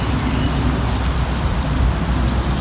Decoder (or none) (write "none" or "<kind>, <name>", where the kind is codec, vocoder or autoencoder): none